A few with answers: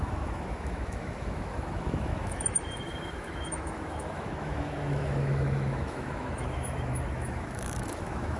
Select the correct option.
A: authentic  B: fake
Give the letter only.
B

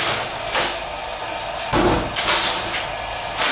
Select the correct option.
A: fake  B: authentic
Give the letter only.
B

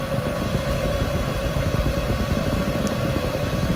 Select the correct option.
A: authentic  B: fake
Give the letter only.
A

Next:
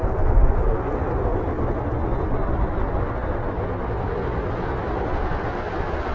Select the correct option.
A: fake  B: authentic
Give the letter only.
B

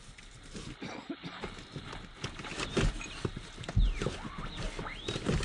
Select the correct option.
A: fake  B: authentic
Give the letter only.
B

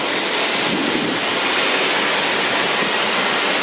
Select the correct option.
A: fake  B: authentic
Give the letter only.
B